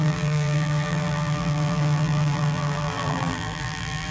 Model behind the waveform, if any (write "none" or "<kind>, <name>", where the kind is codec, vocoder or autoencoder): vocoder, BigVGAN v2